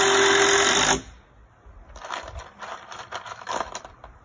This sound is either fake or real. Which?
real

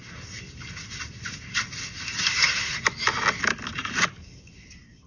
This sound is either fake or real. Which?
real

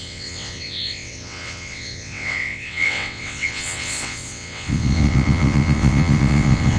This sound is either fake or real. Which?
fake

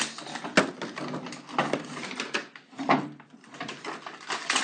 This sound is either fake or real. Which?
real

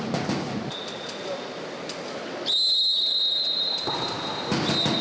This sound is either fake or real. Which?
real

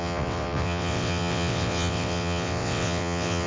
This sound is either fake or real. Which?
fake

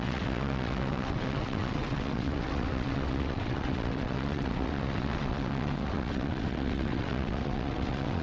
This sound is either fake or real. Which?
fake